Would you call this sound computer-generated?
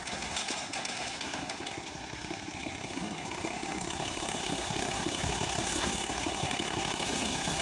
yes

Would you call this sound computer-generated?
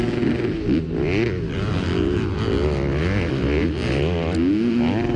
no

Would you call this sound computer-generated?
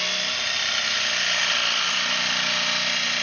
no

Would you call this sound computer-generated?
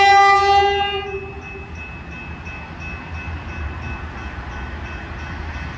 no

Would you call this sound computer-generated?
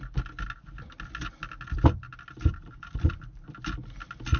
no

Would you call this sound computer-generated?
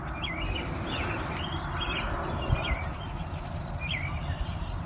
no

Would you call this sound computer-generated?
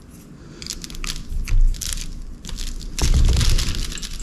no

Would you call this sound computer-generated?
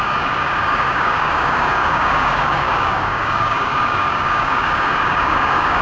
yes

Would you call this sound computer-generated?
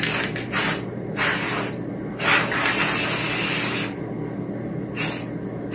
no